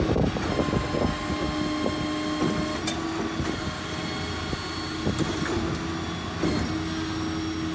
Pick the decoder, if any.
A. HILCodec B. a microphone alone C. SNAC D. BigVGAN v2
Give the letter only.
B